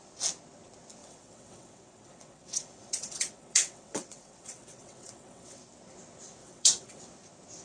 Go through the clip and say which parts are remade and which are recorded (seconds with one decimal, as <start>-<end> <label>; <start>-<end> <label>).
0.0-1.0 recorded; 1.0-5.6 remade; 5.6-6.4 recorded; 6.4-7.0 remade; 7.0-7.6 recorded

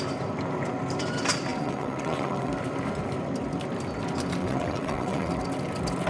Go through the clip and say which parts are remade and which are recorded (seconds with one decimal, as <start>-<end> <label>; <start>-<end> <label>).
0.0-1.5 recorded; 1.5-2.5 remade; 2.5-4.4 recorded; 4.4-5.3 remade; 5.3-6.1 recorded

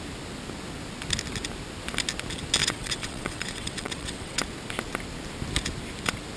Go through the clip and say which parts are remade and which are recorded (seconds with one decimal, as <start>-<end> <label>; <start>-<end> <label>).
0.0-2.6 recorded; 2.6-4.4 remade; 4.4-6.4 recorded

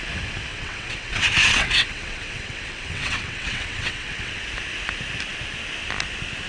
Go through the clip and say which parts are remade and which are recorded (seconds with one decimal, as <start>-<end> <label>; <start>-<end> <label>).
0.0-0.5 recorded; 0.5-4.4 remade; 4.4-6.5 recorded

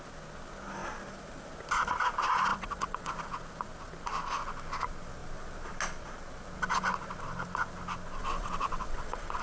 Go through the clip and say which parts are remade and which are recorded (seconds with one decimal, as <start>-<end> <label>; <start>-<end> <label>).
0.0-2.5 recorded; 2.5-3.1 remade; 3.1-8.2 recorded; 8.2-9.4 remade

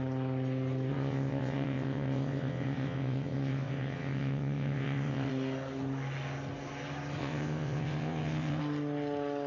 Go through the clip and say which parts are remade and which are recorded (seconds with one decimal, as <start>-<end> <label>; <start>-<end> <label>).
0.0-0.9 recorded; 0.9-5.3 remade; 5.3-7.2 recorded; 7.2-8.6 remade; 8.6-9.5 recorded

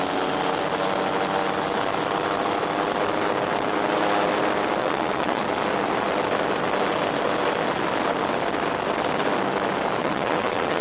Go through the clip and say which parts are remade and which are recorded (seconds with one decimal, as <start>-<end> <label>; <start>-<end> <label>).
0.0-4.8 recorded; 4.8-5.4 remade; 5.4-10.0 recorded; 10.0-10.8 remade

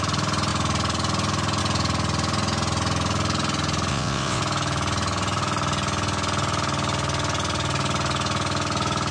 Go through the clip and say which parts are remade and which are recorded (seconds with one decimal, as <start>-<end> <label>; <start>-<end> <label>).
0.0-3.9 recorded; 3.9-4.4 remade; 4.4-9.1 recorded